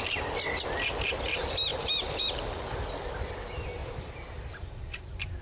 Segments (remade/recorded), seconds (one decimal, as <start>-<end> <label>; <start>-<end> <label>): 0.0-1.7 recorded; 1.7-2.6 remade; 2.6-3.8 recorded; 3.8-5.0 remade; 5.0-5.4 recorded